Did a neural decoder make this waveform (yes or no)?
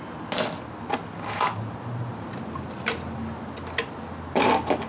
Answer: no